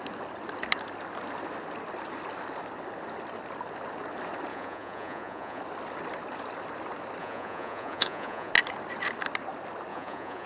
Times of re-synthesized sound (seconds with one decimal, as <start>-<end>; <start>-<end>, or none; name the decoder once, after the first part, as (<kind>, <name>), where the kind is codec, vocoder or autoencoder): 4.5-5.6 (vocoder, Vocos); 7.2-8.5; 9.9-10.5